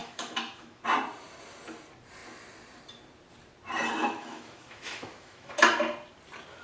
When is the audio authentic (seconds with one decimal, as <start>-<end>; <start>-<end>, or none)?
0.8-4.0; 5.6-6.6